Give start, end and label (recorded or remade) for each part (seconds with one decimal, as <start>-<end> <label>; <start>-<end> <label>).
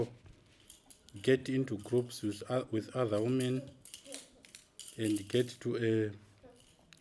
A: 0.0-7.0 recorded